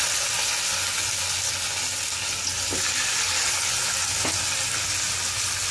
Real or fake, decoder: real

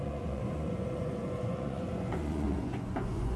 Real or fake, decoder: fake, vocoder, Vocos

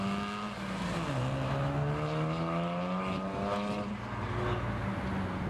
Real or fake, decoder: real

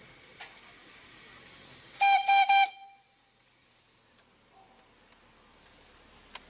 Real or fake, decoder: real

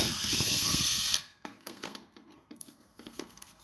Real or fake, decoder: fake, codec, SNAC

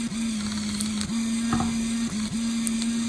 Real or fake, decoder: real